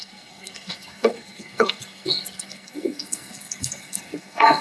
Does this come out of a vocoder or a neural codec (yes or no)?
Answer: yes